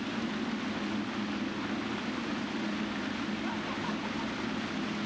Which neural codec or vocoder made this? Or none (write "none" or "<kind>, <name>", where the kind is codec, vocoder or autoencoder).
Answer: none